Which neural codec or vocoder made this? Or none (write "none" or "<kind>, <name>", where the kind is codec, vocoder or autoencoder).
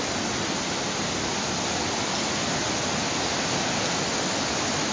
none